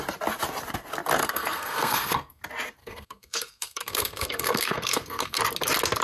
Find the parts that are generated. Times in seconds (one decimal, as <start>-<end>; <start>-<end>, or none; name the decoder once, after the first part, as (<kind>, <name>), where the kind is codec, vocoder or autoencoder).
1.2-2.4 (codec, SNAC); 2.8-5.4